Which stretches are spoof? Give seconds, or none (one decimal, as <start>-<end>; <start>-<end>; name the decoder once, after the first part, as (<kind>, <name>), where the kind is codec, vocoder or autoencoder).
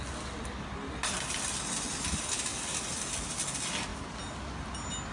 none